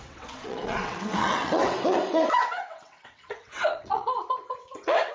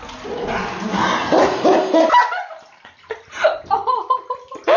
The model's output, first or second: first